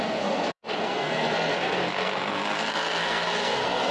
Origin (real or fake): fake